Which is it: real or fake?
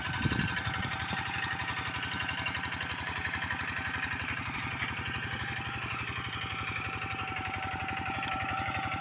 fake